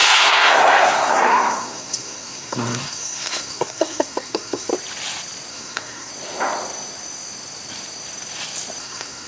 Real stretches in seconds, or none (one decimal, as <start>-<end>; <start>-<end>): 4.7-5.5; 6.1-8.8